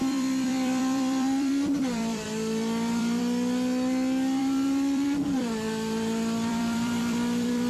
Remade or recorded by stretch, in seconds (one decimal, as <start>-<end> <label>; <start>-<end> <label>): 0.0-3.2 remade; 3.2-4.4 recorded; 4.4-7.7 remade